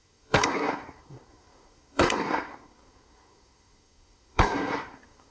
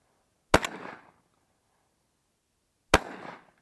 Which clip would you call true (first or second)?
second